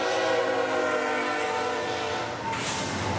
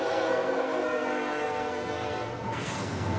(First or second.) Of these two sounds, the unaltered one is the first